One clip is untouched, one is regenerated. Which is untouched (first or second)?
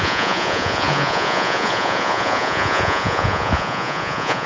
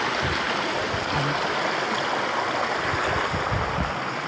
second